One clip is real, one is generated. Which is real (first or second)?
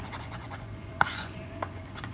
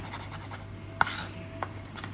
second